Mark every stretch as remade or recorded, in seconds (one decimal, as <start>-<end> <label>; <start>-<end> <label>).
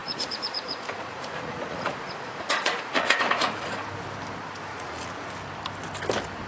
0.0-3.7 remade; 3.7-4.7 recorded; 4.7-5.3 remade; 5.3-6.5 recorded